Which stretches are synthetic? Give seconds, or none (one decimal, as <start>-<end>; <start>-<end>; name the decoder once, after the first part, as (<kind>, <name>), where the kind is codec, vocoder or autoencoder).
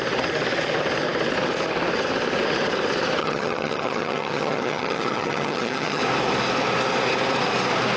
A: 3.2-6.0 (vocoder, HiFi-GAN)